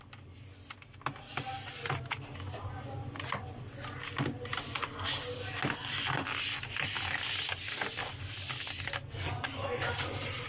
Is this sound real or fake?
real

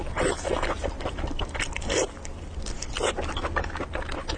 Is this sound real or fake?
real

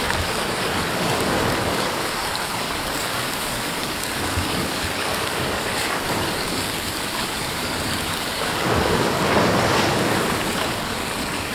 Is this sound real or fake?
fake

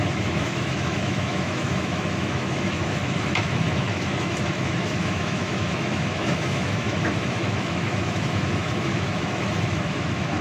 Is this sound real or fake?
fake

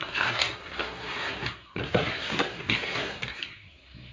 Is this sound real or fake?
fake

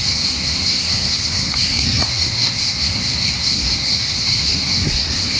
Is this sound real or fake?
fake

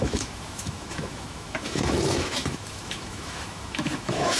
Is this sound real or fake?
fake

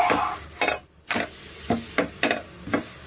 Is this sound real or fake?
real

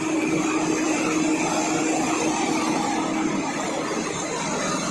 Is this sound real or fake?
real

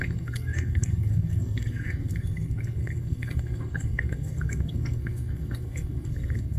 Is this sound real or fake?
fake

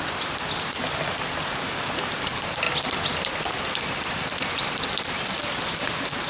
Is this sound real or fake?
real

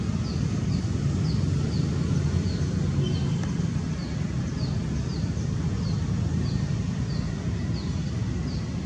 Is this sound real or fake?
real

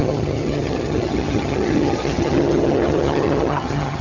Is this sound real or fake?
fake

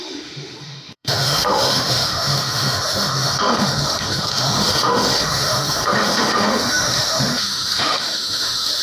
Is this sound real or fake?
fake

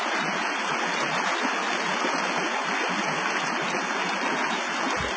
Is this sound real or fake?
real